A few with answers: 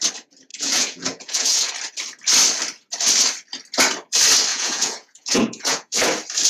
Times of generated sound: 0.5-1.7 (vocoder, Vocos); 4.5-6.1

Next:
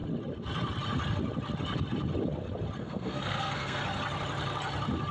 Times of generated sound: 2.8-3.8 (codec, SNAC)

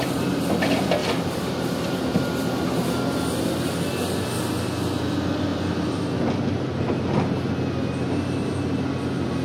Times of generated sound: 1.0-2.6 (vocoder, BigVGAN v2); 5.5-6.0

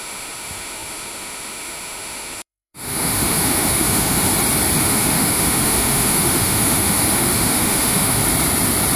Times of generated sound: 0.0-4.3 (autoencoder, DAC-VAE); 4.8-8.2

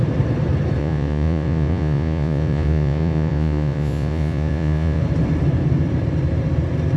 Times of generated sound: 0.8-5.0 (vocoder, Vocos)

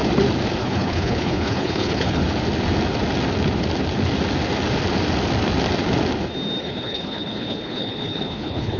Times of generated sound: 0.6-2.2 (codec, HILCodec); 6.6-8.8